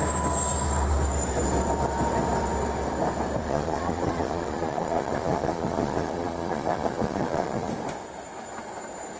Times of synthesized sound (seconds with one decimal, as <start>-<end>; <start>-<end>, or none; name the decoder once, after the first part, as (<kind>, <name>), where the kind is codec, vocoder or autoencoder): 3.4-7.7 (vocoder, Vocos)